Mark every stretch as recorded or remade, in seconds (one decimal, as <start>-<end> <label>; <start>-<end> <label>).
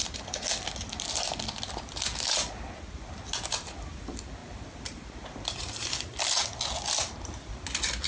0.0-8.1 recorded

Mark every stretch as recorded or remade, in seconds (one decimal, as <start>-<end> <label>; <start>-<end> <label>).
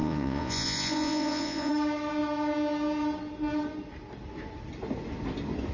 0.0-1.7 remade; 1.7-5.7 recorded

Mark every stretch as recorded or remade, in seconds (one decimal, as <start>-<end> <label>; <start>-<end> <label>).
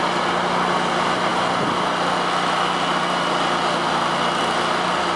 0.0-5.2 recorded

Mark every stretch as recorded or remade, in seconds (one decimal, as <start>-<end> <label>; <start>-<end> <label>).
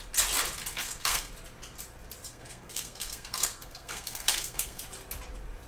0.0-0.7 recorded; 0.7-1.3 remade; 1.3-2.3 recorded; 2.3-4.8 remade; 4.8-5.7 recorded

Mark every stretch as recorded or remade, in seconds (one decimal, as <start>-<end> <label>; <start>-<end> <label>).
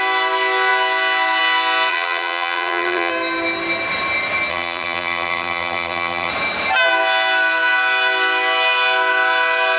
0.0-1.9 recorded; 1.9-3.1 remade; 3.1-4.5 recorded; 4.5-6.3 remade; 6.3-9.8 recorded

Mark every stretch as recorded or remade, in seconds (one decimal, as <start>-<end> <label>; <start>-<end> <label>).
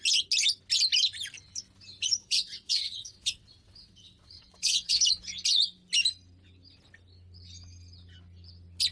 0.0-2.2 recorded; 2.2-5.0 remade; 5.0-8.9 recorded